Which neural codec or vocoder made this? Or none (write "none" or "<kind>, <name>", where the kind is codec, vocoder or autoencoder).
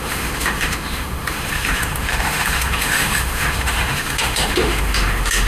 autoencoder, DAC-VAE